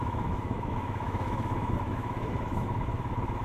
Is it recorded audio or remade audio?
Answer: remade